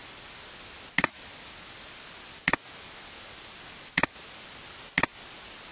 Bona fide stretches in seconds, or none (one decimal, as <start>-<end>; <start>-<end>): 0.0-5.7